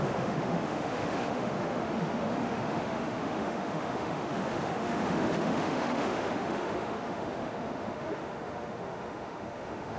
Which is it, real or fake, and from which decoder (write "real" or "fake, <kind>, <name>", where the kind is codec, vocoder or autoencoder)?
fake, autoencoder, DAC-VAE